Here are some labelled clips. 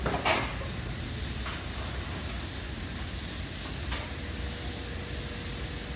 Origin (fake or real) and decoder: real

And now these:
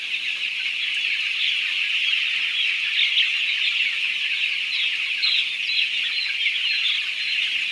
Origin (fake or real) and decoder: real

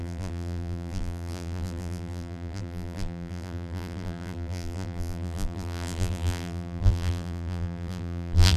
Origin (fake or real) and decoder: fake, vocoder, BigVGAN v2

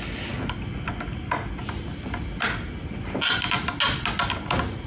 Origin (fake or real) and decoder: real